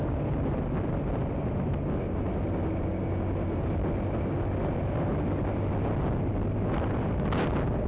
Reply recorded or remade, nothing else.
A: recorded